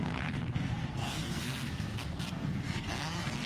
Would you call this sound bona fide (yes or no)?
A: no